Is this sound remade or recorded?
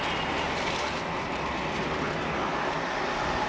recorded